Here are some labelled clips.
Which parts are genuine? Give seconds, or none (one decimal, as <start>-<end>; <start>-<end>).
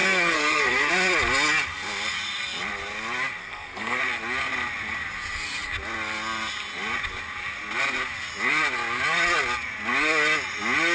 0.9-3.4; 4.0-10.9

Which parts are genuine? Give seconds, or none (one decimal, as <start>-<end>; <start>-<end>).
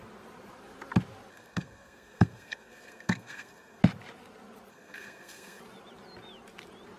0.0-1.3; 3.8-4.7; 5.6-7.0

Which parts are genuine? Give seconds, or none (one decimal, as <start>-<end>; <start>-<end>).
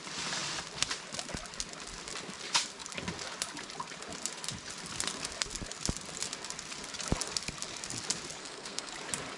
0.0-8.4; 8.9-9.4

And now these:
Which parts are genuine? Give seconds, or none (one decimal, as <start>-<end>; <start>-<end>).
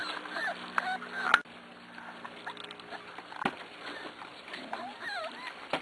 0.0-5.8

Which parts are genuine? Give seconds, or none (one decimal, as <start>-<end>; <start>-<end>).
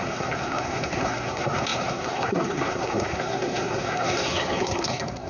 none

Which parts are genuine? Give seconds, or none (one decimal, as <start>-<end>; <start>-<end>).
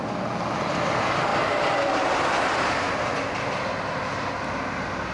0.0-5.1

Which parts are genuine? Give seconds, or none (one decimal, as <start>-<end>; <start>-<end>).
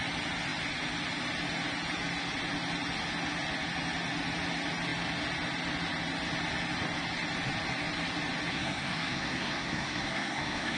0.0-8.5